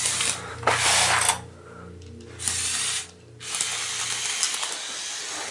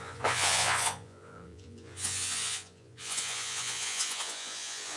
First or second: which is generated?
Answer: second